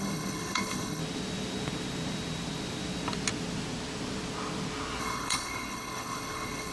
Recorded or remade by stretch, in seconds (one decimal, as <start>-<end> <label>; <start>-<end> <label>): 0.0-1.0 remade; 1.0-5.0 recorded; 5.0-6.7 remade